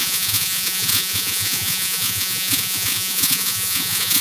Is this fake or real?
fake